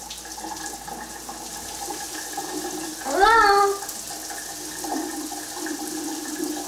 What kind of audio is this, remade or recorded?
recorded